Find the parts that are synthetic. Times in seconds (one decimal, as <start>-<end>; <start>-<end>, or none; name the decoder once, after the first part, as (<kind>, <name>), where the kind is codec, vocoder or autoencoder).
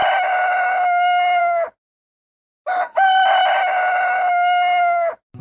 none